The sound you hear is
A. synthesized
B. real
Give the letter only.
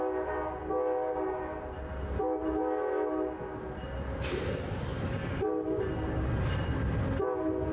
B